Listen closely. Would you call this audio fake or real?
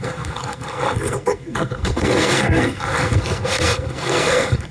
fake